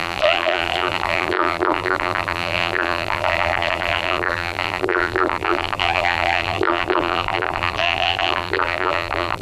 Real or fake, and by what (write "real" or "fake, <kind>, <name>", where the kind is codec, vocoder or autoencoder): fake, vocoder, BigVGAN v2